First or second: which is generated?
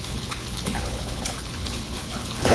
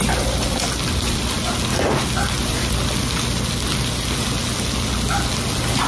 first